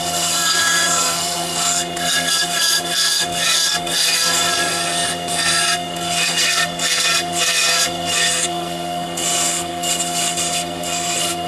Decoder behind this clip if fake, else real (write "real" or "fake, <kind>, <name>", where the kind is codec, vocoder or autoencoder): fake, codec, SNAC